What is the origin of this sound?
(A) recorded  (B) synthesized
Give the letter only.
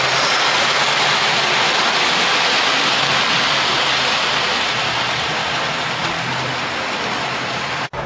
A